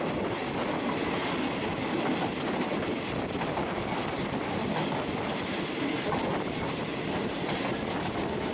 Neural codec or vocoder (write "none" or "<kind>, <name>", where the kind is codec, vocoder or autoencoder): none